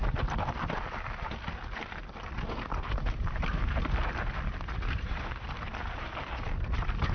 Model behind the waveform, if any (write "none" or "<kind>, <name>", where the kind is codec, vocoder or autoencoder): vocoder, BigVGAN v2